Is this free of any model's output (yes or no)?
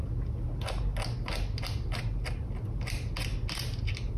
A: yes